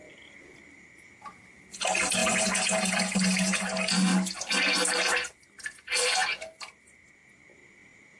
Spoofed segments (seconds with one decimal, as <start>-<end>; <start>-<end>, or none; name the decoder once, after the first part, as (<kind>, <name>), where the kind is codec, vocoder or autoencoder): none